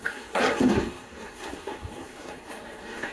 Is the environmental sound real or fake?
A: fake